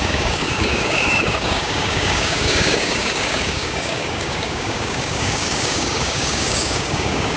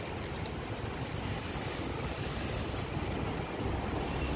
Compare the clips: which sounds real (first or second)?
second